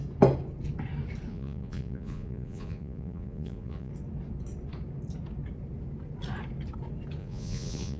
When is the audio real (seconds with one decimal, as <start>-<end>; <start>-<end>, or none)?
0.0-1.3; 3.9-7.2